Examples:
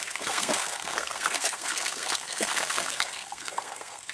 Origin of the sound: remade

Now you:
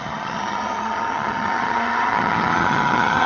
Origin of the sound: remade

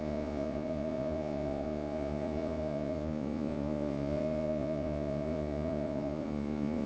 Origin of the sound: remade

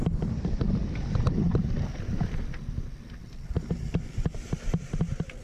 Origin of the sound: recorded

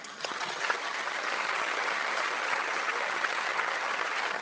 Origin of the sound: remade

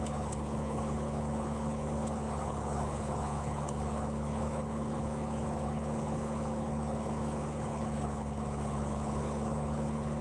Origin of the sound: remade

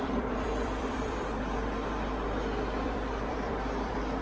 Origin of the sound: remade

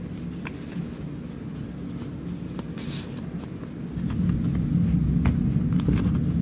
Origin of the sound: recorded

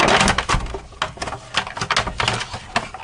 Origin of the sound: recorded